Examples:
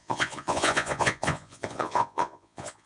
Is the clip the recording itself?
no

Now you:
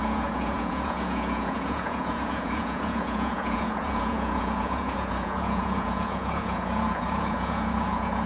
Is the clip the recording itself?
no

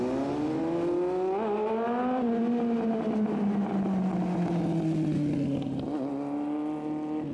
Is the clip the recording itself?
yes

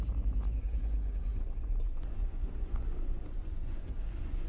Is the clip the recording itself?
no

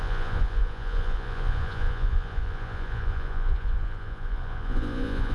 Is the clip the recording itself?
no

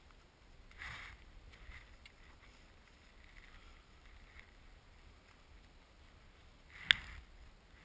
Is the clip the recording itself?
yes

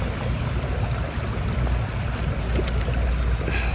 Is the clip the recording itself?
yes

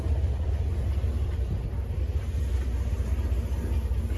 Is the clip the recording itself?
yes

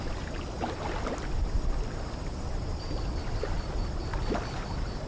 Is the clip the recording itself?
yes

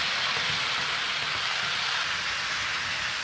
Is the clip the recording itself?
yes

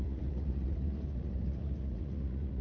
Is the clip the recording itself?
no